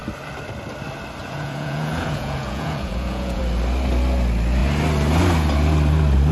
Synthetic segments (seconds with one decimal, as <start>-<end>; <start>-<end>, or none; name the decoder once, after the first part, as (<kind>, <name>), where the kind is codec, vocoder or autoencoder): 1.2-3.4 (vocoder, Vocos)